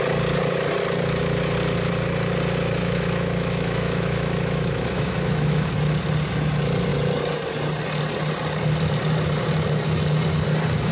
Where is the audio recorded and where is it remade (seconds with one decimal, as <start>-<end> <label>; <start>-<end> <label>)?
0.0-2.8 recorded; 2.8-5.7 remade; 5.7-10.9 recorded

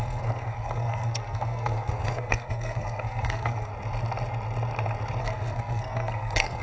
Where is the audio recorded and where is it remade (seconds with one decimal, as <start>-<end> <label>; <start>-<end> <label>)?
0.0-3.7 remade; 3.7-5.2 recorded; 5.2-6.6 remade

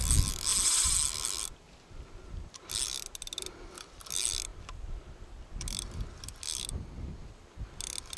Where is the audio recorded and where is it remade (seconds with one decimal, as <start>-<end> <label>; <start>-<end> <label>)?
0.0-8.2 recorded

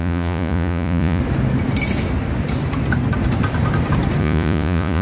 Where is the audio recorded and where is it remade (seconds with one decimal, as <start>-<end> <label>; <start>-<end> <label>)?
0.0-1.2 remade; 1.2-4.2 recorded; 4.2-5.0 remade

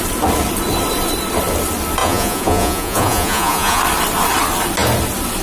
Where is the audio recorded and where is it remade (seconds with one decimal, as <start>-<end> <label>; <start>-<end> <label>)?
0.0-2.0 recorded; 2.0-3.8 remade; 3.8-5.4 recorded

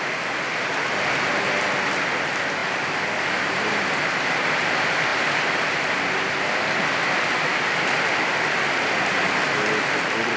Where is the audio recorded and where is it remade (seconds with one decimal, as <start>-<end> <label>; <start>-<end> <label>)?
0.0-10.4 recorded